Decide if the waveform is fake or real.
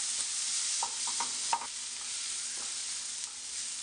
real